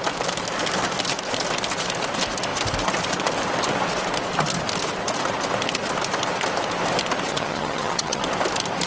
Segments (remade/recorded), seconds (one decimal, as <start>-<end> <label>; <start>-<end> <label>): 0.0-7.3 recorded; 7.3-8.2 remade; 8.2-8.9 recorded